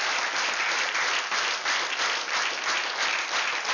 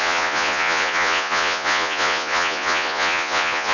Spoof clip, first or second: second